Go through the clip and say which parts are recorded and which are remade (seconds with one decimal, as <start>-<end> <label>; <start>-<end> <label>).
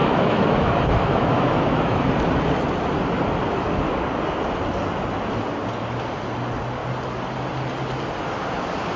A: 0.0-2.1 remade; 2.1-9.0 recorded